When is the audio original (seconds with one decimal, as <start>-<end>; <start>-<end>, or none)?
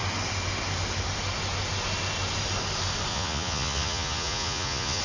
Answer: 0.0-3.1